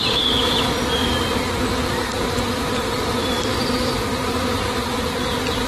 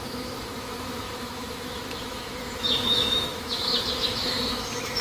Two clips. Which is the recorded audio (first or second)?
first